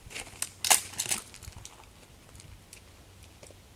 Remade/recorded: recorded